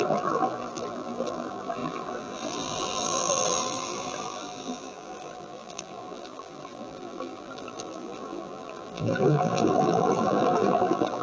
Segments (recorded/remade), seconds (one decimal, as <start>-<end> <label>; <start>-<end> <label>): 0.0-11.2 remade